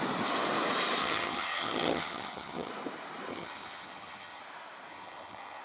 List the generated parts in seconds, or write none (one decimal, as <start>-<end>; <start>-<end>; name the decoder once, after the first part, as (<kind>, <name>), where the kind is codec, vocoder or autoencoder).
1.0-2.7 (vocoder, HiFi-GAN); 3.3-4.4; 4.9-5.6